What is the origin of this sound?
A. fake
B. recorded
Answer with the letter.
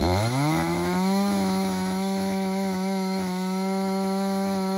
A